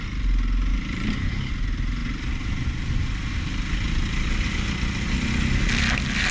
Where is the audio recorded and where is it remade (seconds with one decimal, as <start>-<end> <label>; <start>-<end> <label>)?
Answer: 0.0-0.7 recorded; 0.7-1.5 remade; 1.5-6.3 recorded